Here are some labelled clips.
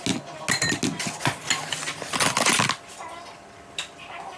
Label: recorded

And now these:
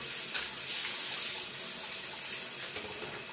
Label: recorded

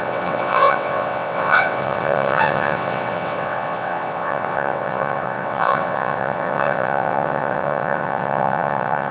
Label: remade